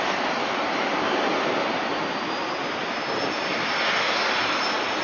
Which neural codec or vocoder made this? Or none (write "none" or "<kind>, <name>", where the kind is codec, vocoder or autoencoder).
none